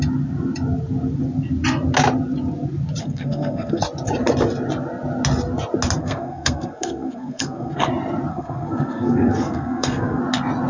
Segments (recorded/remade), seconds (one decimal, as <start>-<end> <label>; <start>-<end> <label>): 0.0-3.0 recorded; 3.0-3.8 remade; 3.8-6.0 recorded; 6.0-7.9 remade; 7.9-8.3 recorded; 8.3-10.2 remade; 10.2-10.7 recorded